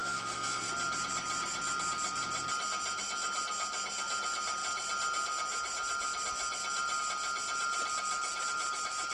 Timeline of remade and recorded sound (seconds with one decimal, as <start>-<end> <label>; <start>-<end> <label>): 0.0-0.7 remade; 0.7-9.1 recorded